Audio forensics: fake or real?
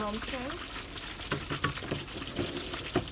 real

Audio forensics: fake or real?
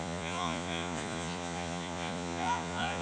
fake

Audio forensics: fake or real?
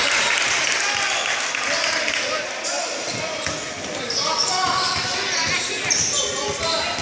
real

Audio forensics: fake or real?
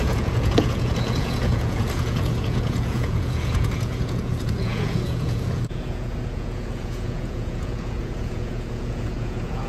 fake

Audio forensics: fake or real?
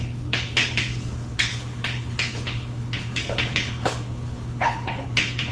fake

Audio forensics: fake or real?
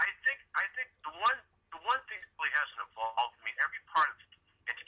real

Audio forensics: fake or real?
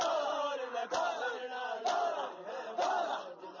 real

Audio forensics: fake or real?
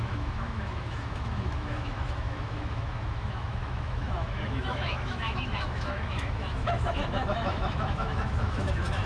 fake